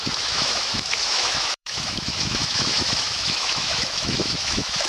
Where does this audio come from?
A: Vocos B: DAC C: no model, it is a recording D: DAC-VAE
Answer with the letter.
D